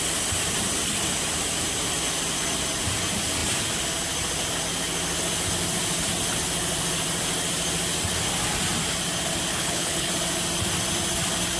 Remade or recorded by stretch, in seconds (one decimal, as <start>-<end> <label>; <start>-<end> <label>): 0.0-9.5 recorded; 9.5-10.1 remade; 10.1-11.6 recorded